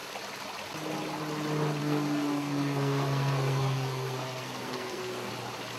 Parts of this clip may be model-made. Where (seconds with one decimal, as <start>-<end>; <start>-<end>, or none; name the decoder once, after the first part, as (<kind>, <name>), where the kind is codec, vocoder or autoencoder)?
1.8-5.3 (codec, SNAC)